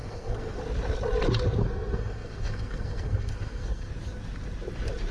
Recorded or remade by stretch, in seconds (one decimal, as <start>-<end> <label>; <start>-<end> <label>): 0.0-0.6 remade; 0.6-1.6 recorded; 1.6-3.9 remade; 3.9-5.1 recorded